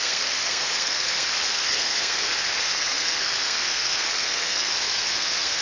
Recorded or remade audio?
remade